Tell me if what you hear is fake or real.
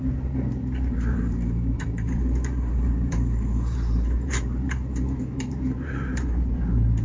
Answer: fake